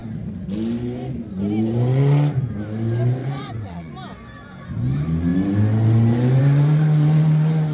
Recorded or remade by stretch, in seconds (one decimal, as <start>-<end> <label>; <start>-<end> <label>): 0.0-3.2 recorded; 3.2-3.9 remade; 3.9-7.7 recorded